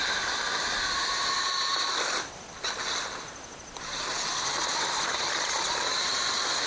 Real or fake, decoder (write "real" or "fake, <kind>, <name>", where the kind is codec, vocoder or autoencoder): real